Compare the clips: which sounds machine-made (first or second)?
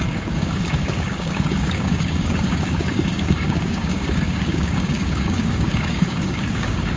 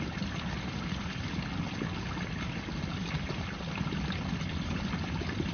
first